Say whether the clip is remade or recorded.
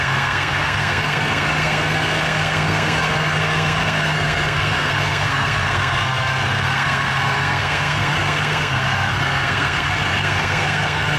remade